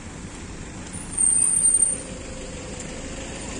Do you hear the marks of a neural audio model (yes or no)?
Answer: no